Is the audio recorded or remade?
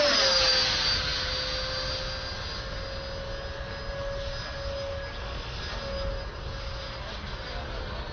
recorded